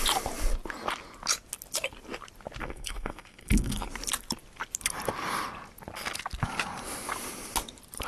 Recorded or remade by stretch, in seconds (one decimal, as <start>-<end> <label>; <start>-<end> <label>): 0.0-2.6 recorded; 2.6-3.9 remade; 3.9-8.1 recorded

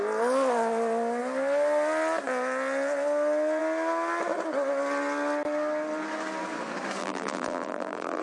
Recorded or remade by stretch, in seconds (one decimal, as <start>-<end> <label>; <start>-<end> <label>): 0.0-7.0 recorded; 7.0-8.2 remade

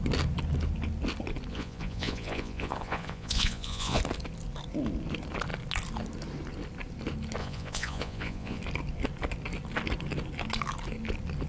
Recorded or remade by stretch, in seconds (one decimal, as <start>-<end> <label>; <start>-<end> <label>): 0.0-1.5 recorded; 1.5-4.0 remade; 4.0-7.4 recorded; 7.4-8.6 remade; 8.6-11.5 recorded

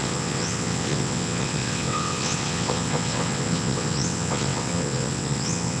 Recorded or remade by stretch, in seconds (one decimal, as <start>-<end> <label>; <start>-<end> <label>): 0.0-5.8 remade

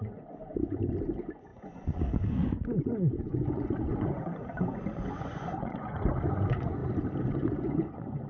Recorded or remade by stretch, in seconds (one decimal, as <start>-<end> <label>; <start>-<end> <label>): 0.0-6.8 remade; 6.8-7.3 recorded; 7.3-8.3 remade

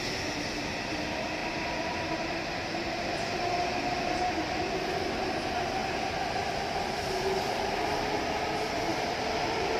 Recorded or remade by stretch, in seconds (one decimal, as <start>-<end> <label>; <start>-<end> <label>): 0.0-1.4 recorded; 1.4-2.3 remade; 2.3-5.8 recorded; 5.8-7.1 remade; 7.1-8.9 recorded; 8.9-9.8 remade